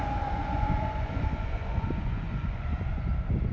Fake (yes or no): yes